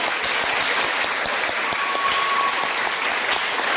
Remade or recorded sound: recorded